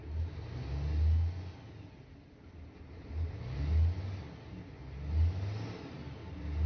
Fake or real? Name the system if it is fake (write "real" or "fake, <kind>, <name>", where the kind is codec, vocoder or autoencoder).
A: real